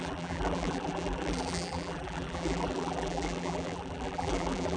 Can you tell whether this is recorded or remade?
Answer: remade